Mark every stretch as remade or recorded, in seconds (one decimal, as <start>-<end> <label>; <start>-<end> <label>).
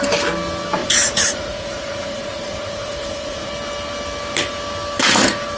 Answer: 0.0-0.8 recorded; 0.8-3.5 remade; 3.5-5.6 recorded